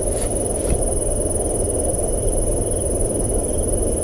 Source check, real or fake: real